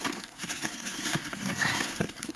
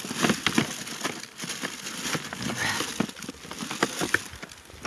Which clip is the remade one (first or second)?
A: first